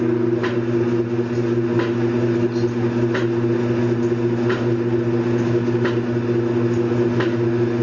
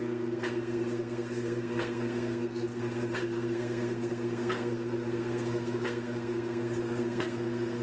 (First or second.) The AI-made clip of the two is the second